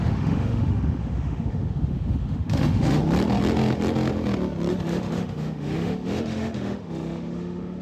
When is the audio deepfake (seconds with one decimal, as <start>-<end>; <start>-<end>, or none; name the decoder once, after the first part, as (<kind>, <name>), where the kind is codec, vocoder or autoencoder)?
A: 0.0-3.0 (autoencoder, DAC-VAE); 4.7-7.8